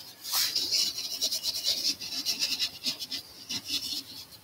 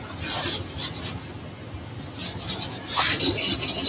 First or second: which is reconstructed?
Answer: first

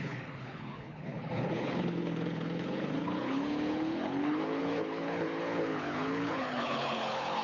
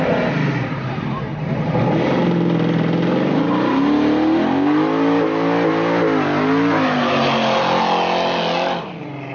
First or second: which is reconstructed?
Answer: first